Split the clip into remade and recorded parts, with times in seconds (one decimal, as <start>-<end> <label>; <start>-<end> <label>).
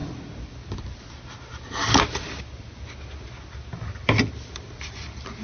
0.0-5.4 recorded